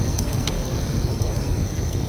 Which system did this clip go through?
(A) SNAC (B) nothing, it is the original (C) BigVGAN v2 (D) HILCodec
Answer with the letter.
A